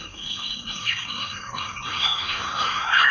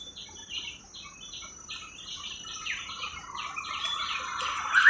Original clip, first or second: second